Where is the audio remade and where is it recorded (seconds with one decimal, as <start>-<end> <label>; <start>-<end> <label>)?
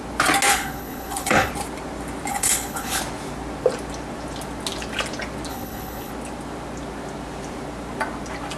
0.0-0.5 recorded; 0.5-1.5 remade; 1.5-2.3 recorded; 2.3-3.0 remade; 3.0-5.5 recorded; 5.5-6.1 remade; 6.1-8.6 recorded